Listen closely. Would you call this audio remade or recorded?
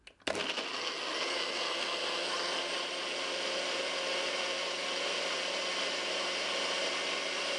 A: recorded